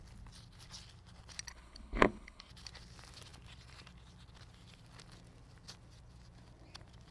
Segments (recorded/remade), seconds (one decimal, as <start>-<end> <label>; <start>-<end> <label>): 0.0-1.5 recorded; 1.5-2.5 remade; 2.5-7.1 recorded